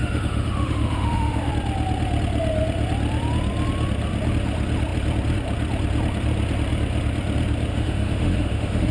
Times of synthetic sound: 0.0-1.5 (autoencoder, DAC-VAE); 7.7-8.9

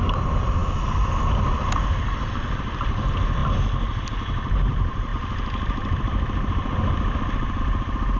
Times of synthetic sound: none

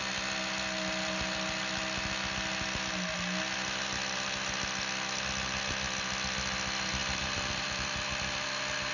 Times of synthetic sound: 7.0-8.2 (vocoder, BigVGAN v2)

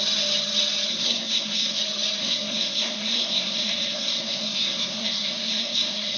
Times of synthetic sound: 0.9-1.8 (codec, SNAC); 2.2-6.2

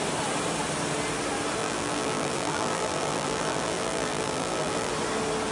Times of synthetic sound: 1.6-4.9 (vocoder, BigVGAN v2)

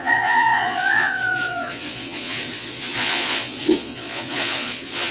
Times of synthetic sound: 0.0-5.1 (vocoder, Vocos)